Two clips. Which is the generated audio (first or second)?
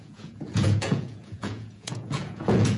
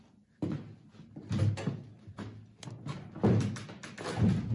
first